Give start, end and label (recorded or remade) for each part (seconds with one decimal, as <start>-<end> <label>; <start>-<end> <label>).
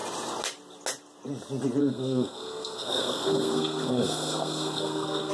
0.0-1.8 recorded; 1.8-5.3 remade